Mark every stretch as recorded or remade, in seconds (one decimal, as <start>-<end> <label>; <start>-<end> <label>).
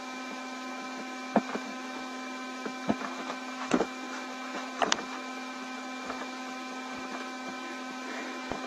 0.0-8.7 remade